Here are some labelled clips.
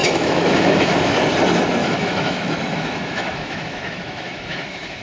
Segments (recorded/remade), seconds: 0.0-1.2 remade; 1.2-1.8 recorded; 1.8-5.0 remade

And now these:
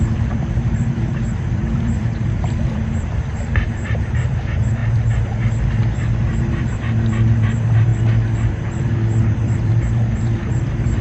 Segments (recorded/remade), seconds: 0.0-4.8 remade; 4.8-6.4 recorded; 6.4-7.9 remade; 7.9-8.5 recorded; 8.5-11.0 remade

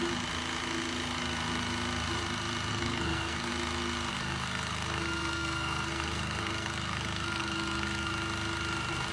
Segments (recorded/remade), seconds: 0.0-2.7 recorded; 2.7-3.5 remade; 3.5-4.1 recorded; 4.1-8.1 remade; 8.1-9.1 recorded